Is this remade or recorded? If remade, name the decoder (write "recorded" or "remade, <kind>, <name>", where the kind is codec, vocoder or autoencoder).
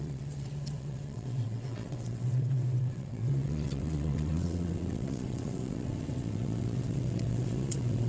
remade, vocoder, WaveNeXt